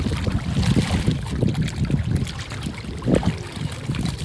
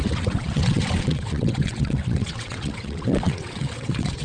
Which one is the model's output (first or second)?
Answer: second